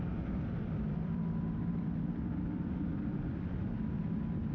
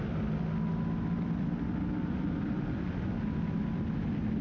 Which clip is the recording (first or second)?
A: second